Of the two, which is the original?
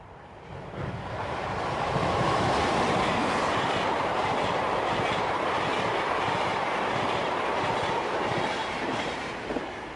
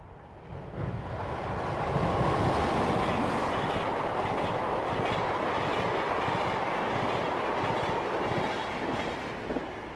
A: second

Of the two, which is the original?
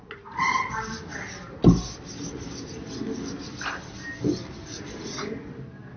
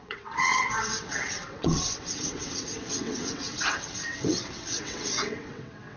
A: first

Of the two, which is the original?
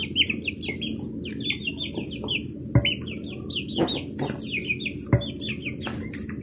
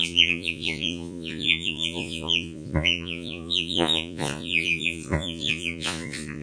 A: first